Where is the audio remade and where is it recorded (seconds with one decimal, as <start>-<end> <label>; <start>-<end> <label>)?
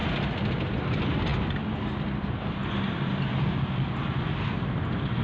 0.0-5.2 recorded